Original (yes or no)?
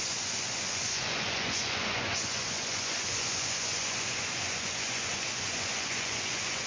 no